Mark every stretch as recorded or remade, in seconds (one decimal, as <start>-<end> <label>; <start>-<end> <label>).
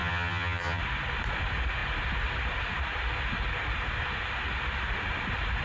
0.0-0.8 remade; 0.8-5.6 recorded